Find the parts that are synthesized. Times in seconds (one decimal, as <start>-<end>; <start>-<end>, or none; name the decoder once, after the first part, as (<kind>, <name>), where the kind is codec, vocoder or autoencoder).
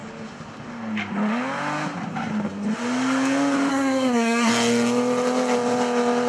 3.7-4.5 (codec, SNAC)